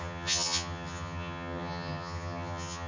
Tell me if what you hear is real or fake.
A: fake